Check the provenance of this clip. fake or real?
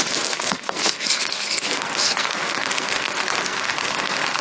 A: fake